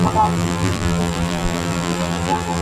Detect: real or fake fake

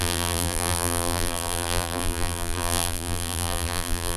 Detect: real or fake fake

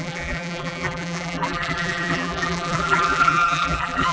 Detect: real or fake fake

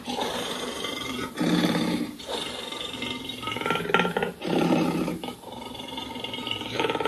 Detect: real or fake fake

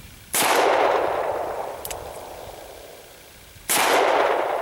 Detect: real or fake fake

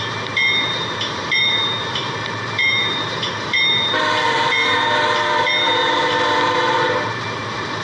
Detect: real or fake fake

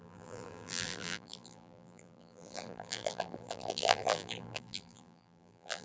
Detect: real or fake fake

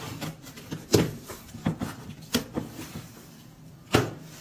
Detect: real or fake fake